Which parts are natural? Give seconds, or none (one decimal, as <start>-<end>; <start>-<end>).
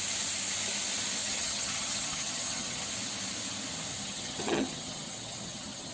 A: 0.0-1.2; 2.9-3.9